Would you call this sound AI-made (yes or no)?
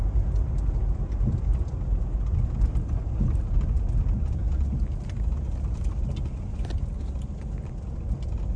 no